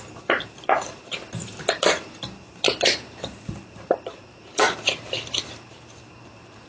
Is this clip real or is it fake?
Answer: fake